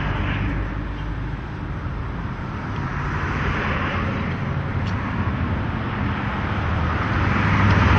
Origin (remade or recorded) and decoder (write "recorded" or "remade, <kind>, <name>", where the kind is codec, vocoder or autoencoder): recorded